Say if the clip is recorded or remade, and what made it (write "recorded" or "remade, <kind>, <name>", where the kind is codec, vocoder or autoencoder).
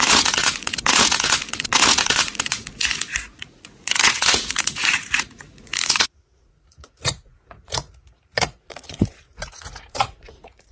remade, vocoder, Vocos